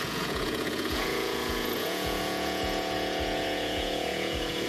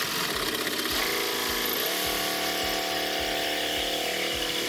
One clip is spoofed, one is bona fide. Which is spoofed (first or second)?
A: first